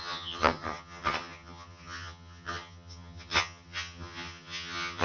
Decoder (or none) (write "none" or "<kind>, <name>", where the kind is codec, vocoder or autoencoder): vocoder, HiFi-GAN